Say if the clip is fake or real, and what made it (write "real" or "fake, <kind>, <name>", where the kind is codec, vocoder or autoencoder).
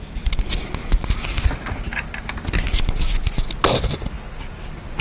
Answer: real